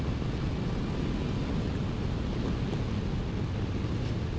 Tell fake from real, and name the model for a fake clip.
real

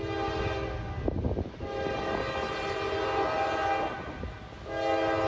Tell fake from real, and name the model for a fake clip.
real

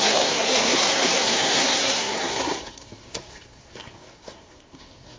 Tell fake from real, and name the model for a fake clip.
fake, codec, SNAC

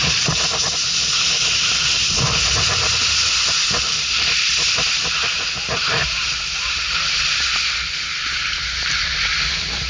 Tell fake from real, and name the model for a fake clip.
real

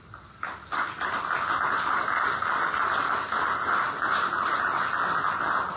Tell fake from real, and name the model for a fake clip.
real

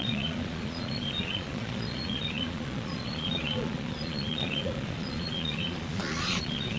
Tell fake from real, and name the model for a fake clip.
fake, vocoder, Vocos